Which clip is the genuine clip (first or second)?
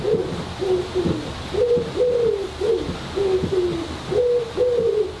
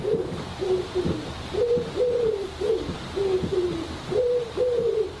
first